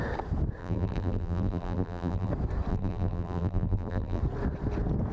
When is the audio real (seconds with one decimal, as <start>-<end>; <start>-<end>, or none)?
0.0-0.6; 2.3-2.7; 4.2-5.1